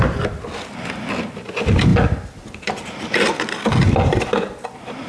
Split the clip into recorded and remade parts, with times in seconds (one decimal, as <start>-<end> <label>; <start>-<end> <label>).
0.0-5.1 recorded